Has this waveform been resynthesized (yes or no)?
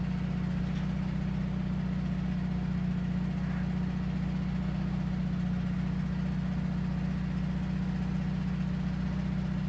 no